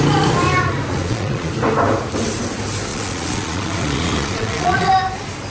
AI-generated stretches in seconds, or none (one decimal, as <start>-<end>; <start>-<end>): 0.9-1.5; 2.9-4.9